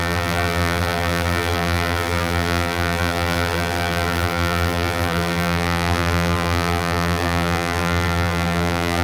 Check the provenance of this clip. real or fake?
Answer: fake